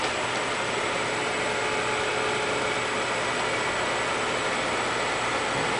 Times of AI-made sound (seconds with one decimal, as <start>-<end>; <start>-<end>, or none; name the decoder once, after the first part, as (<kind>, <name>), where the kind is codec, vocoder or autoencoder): none